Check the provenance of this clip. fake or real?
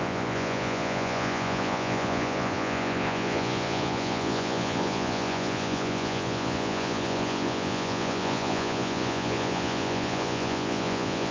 fake